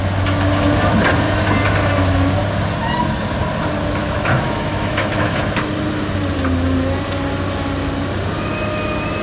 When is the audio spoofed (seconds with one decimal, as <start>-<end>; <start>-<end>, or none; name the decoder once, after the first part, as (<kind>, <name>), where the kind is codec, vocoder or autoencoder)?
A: 4.0-5.4 (autoencoder, DAC-VAE)